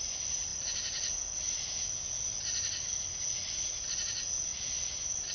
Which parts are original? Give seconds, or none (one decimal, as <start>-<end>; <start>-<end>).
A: 0.0-5.3